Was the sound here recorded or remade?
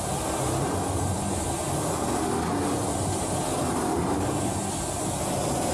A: recorded